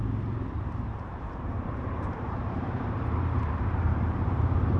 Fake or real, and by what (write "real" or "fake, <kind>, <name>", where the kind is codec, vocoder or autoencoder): fake, vocoder, BigVGAN v2